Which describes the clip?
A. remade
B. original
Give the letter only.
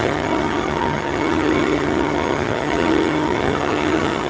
A